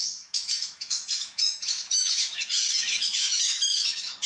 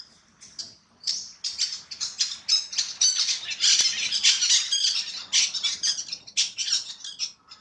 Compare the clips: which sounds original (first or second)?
second